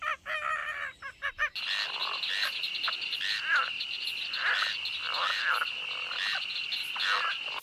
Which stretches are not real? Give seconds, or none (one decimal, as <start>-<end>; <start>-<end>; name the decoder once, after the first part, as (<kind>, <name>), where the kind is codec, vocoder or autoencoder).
0.6-1.3 (vocoder, BigVGAN v2); 2.0-6.6